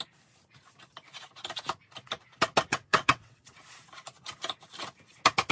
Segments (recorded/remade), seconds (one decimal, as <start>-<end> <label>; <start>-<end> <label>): 0.0-2.7 recorded; 2.7-3.5 remade; 3.5-5.5 recorded